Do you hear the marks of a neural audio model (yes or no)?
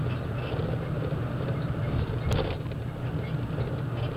no